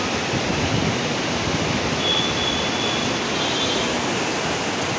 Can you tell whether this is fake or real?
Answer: real